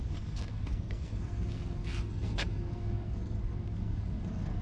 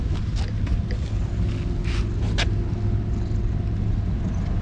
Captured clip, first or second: second